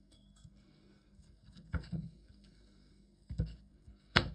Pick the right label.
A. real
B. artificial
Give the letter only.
B